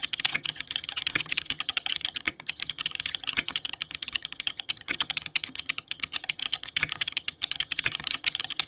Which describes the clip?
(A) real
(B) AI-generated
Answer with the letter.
B